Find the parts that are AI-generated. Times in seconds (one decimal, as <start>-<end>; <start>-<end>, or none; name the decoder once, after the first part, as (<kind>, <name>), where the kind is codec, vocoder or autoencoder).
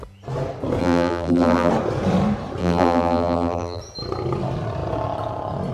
0.8-1.7 (vocoder, BigVGAN v2); 2.6-3.8